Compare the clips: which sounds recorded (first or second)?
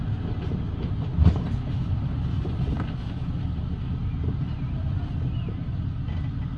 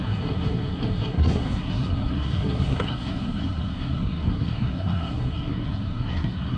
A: first